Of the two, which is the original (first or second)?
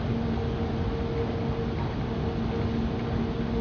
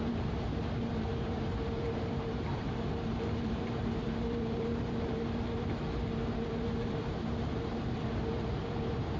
first